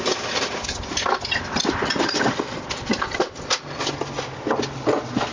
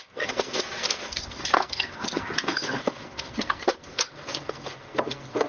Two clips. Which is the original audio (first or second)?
first